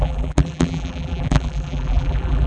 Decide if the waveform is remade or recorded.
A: remade